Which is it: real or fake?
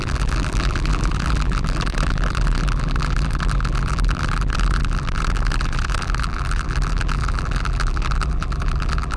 fake